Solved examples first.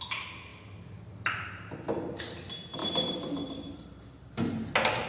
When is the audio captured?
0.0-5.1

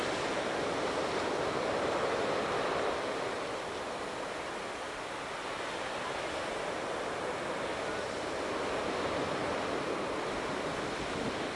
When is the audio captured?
0.0-11.6

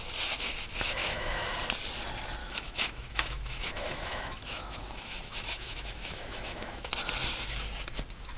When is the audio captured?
0.0-1.0; 1.5-2.4; 6.9-8.4

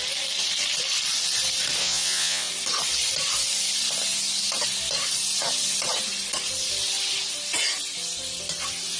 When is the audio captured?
0.0-1.8; 2.5-9.0

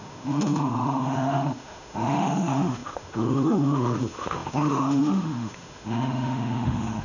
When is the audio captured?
none

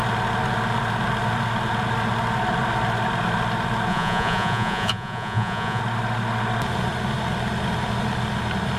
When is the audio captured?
0.0-3.9; 5.8-8.8

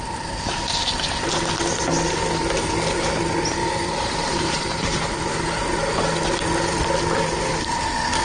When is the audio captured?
0.0-3.6; 5.3-8.2

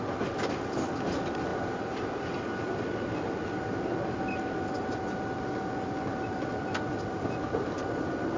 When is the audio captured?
0.0-1.5; 2.4-8.4